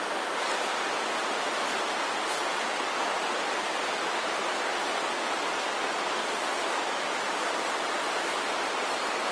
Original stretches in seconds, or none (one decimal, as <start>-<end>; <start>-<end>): 0.0-9.3